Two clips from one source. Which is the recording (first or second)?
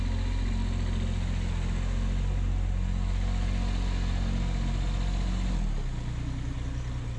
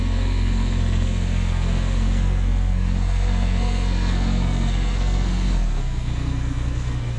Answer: first